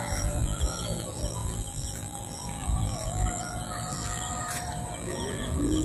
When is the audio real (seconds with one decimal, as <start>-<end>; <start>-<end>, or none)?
4.4-4.9